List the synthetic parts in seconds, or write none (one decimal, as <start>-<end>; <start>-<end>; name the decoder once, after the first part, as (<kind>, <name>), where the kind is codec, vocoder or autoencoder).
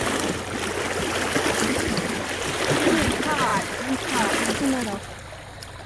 none